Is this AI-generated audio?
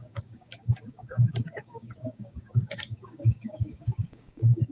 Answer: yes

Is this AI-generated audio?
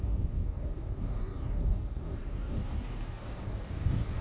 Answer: yes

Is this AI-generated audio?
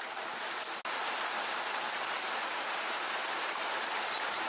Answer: no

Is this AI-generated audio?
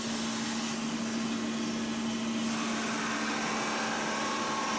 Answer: no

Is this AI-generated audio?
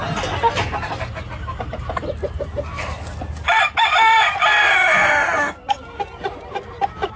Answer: no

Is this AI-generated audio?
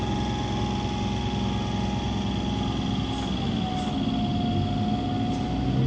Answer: no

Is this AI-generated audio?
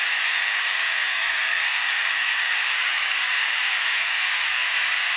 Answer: yes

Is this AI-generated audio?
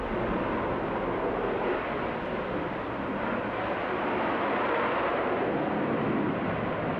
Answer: no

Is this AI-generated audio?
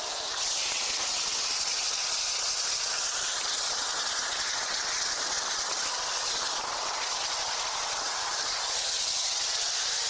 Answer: no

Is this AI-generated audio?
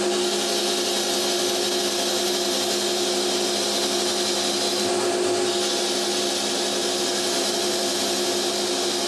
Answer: no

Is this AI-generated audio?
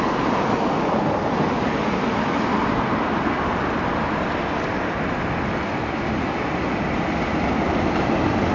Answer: no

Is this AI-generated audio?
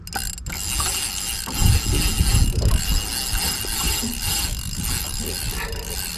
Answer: no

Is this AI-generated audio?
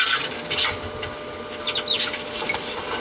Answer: no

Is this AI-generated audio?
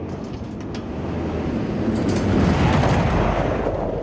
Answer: no